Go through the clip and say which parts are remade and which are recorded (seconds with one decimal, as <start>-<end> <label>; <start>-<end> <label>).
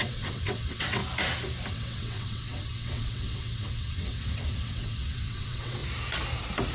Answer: 0.0-1.0 remade; 1.0-1.7 recorded; 1.7-5.8 remade; 5.8-6.7 recorded